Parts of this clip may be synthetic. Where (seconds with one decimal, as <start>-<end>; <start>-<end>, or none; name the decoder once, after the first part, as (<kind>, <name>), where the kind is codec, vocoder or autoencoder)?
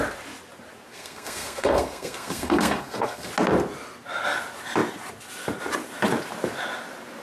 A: 0.9-3.3 (codec, SNAC)